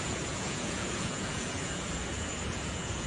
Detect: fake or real fake